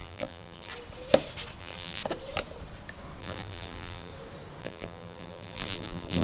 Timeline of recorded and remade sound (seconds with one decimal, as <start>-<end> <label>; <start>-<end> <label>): 0.0-0.7 remade; 0.7-1.6 recorded; 1.6-2.0 remade; 2.0-3.2 recorded; 3.2-4.1 remade; 4.1-4.6 recorded; 4.6-6.2 remade

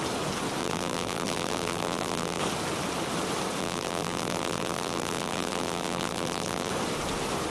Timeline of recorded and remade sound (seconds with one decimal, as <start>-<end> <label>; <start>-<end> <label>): 0.0-0.6 recorded; 0.6-2.4 remade; 2.4-3.6 recorded; 3.6-6.7 remade; 6.7-7.5 recorded

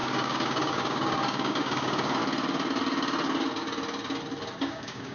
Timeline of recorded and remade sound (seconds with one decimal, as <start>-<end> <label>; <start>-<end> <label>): 0.0-2.2 remade; 2.2-4.6 recorded; 4.6-5.1 remade

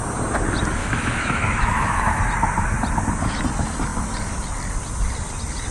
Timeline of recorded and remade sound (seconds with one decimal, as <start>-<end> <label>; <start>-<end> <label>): 0.0-0.8 recorded; 0.8-2.2 remade; 2.2-5.7 recorded

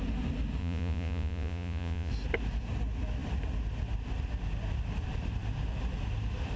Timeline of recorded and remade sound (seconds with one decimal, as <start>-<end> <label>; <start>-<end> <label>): 0.0-0.6 recorded; 0.6-2.1 remade; 2.1-6.6 recorded

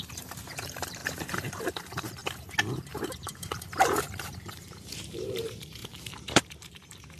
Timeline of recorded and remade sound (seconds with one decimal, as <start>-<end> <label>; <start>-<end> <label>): 0.0-2.2 remade; 2.2-2.7 recorded; 2.7-7.2 remade

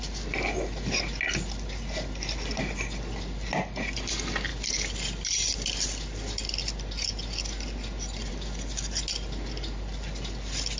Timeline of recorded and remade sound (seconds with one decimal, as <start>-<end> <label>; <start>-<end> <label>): 0.0-10.8 recorded